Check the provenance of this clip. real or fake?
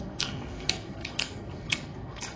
fake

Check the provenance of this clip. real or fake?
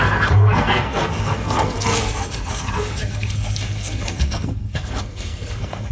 fake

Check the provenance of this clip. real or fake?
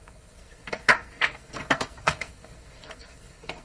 fake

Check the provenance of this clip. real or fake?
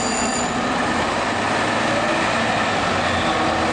real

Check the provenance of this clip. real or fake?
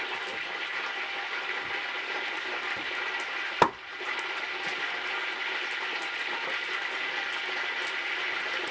real